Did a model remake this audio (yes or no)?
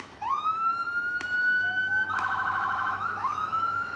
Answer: yes